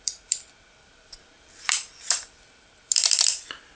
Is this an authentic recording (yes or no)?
no